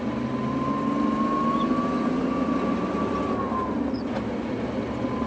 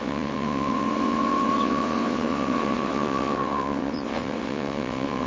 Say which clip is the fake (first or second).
second